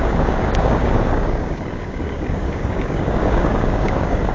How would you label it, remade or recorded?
remade